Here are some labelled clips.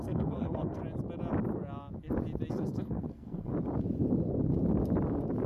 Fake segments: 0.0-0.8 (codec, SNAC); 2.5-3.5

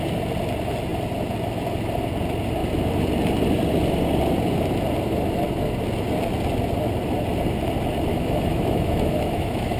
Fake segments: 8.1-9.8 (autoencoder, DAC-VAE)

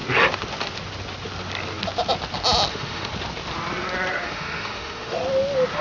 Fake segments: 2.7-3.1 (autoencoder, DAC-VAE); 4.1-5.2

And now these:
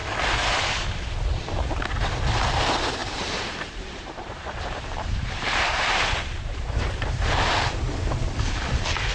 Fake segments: 3.0-7.8 (vocoder, BigVGAN v2)